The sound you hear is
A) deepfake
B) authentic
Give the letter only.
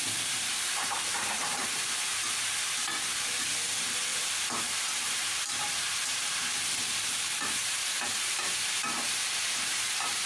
A